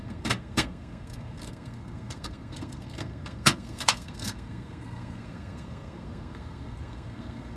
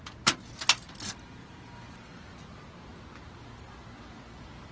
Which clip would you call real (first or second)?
second